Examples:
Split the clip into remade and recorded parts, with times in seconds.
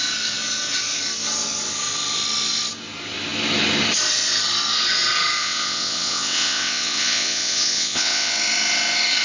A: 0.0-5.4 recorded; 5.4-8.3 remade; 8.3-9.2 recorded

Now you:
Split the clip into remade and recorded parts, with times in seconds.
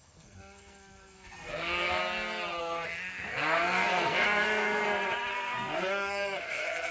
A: 0.0-2.0 remade; 2.0-2.6 recorded; 2.6-4.8 remade; 4.8-5.3 recorded; 5.3-6.9 remade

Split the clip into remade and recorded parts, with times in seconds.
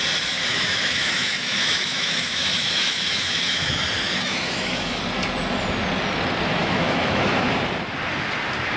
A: 0.0-0.5 recorded; 0.5-3.8 remade; 3.8-4.2 recorded; 4.2-5.0 remade; 5.0-6.6 recorded; 6.6-7.6 remade; 7.6-8.8 recorded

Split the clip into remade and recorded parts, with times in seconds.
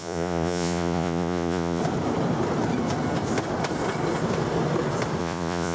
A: 0.0-1.8 remade; 1.8-5.2 recorded; 5.2-5.7 remade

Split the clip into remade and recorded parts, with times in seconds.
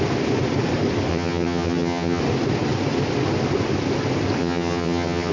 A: 0.0-1.1 recorded; 1.1-2.2 remade; 2.2-4.4 recorded; 4.4-5.3 remade